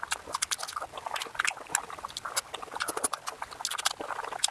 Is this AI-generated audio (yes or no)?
no